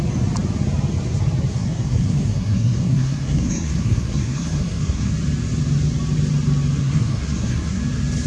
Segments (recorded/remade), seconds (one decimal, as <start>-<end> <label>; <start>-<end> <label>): 0.0-1.5 recorded; 1.5-5.1 remade; 5.1-6.8 recorded; 6.8-7.8 remade; 7.8-8.3 recorded